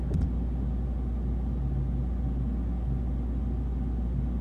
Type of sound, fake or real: real